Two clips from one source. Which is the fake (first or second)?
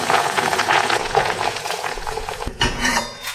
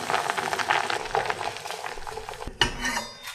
first